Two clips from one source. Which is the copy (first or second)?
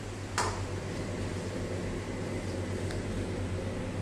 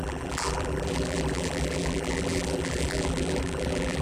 second